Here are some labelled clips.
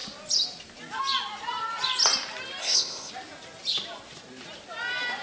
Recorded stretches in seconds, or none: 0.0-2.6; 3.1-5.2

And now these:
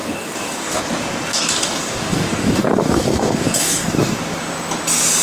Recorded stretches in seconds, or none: 0.8-1.3; 4.2-5.2

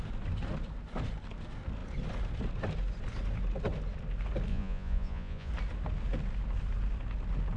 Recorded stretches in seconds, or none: 0.0-4.5; 5.5-7.6

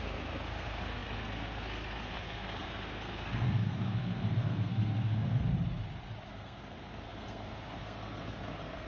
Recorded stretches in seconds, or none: 5.5-6.3

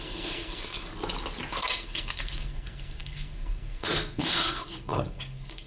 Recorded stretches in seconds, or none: 0.9-1.5